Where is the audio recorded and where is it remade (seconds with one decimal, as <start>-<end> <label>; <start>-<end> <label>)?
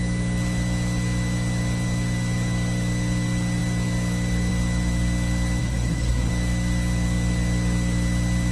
0.0-5.6 recorded; 5.6-6.3 remade; 6.3-8.5 recorded